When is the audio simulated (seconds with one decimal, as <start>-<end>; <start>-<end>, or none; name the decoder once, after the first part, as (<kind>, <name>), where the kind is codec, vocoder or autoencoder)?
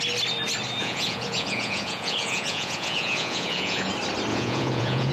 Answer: 0.8-3.9 (vocoder, Vocos); 4.3-5.1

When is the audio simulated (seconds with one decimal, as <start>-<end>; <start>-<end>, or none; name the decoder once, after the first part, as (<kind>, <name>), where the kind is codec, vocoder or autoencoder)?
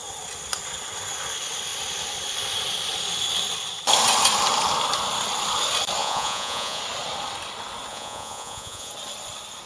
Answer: 6.0-6.8 (vocoder, Vocos); 7.9-8.9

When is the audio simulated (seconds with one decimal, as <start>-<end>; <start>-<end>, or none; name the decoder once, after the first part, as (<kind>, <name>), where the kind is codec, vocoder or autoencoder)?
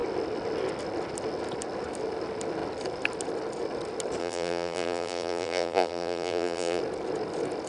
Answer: 4.2-6.8 (vocoder, BigVGAN v2)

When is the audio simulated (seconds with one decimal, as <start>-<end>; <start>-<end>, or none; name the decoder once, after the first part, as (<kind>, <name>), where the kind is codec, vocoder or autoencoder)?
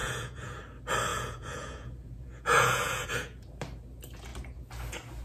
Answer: 0.0-0.6 (vocoder, Vocos); 1.1-3.6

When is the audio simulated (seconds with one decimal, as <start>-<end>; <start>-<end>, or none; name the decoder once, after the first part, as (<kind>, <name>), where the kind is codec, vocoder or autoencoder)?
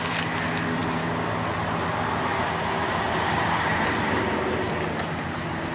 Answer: none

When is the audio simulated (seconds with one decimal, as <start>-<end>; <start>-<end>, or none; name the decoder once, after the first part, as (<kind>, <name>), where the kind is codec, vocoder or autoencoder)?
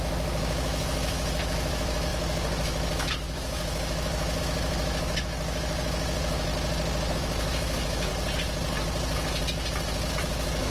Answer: 0.0-6.5 (autoencoder, DAC-VAE); 7.1-8.1; 10.1-10.7